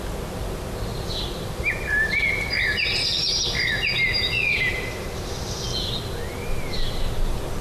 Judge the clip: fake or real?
real